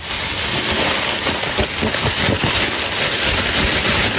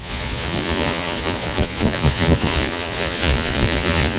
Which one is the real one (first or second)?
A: first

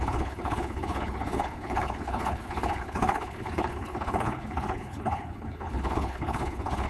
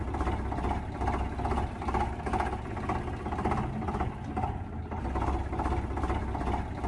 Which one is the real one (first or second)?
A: second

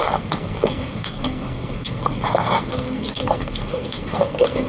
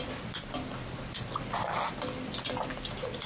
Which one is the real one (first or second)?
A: second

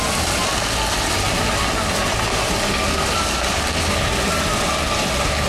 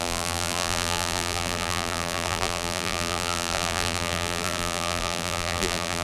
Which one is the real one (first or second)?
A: first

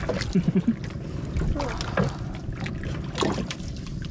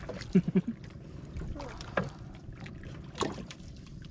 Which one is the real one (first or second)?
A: first